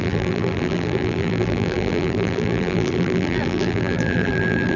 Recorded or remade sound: remade